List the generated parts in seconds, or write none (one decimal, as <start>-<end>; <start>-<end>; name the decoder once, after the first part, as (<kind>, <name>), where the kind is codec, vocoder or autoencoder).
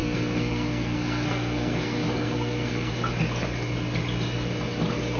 0.0-2.9 (codec, SNAC)